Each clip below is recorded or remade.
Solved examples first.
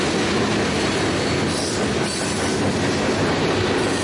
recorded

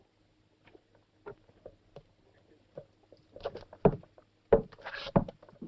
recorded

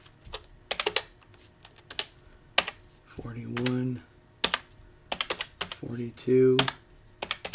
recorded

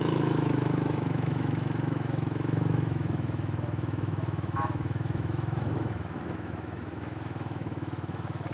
remade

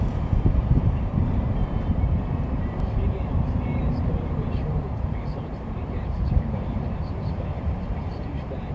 remade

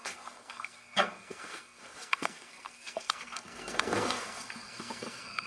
remade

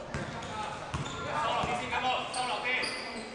recorded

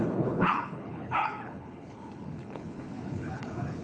remade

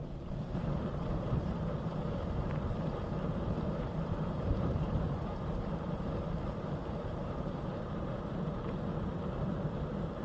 remade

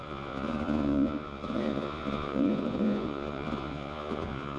remade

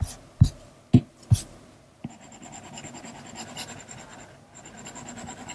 recorded